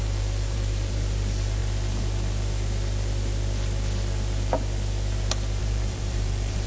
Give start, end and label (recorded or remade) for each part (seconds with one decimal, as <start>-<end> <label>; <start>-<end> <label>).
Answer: 0.0-1.6 remade; 1.6-5.6 recorded; 5.6-6.7 remade